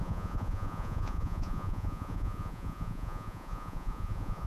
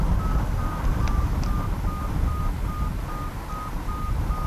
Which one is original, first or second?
second